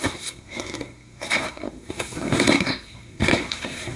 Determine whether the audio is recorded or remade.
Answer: remade